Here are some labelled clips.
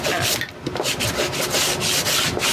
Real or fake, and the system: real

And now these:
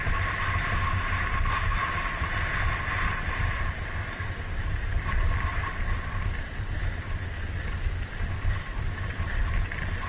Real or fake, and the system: real